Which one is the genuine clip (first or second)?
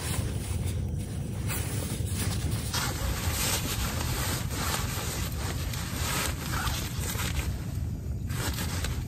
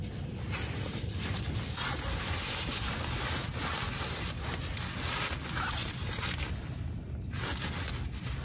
second